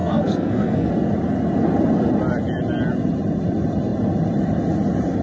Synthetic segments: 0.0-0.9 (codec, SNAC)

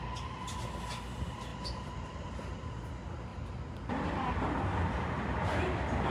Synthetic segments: 1.5-2.7 (vocoder, BigVGAN v2); 3.3-4.1

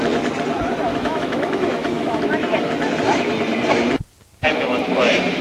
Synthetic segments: 0.9-2.2 (autoencoder, DAC-VAE)

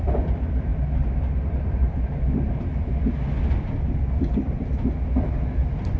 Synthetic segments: 0.0-6.0 (vocoder, BigVGAN v2)